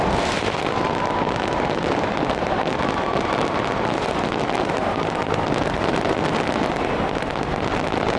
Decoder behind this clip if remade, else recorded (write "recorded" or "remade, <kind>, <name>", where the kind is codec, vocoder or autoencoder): remade, vocoder, BigVGAN v2